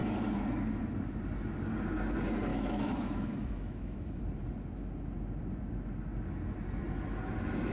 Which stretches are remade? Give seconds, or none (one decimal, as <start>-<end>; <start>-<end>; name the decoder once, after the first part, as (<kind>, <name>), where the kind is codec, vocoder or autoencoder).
2.5-4.2 (autoencoder, DAC-VAE)

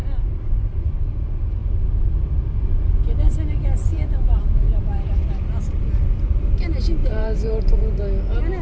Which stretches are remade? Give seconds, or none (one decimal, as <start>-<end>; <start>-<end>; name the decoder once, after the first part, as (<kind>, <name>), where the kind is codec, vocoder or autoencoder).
3.9-6.5 (vocoder, BigVGAN v2); 7.0-7.9

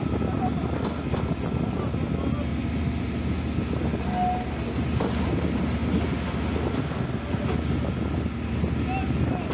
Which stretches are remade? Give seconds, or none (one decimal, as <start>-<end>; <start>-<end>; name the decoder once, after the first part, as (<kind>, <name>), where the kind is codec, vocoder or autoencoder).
none